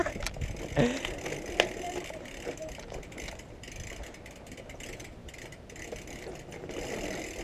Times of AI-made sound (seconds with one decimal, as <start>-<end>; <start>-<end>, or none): none